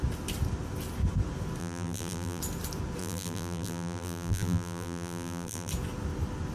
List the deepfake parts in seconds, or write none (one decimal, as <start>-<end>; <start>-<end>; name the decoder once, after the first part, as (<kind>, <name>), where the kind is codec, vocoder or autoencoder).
1.6-2.4 (vocoder, BigVGAN v2); 3.0-5.7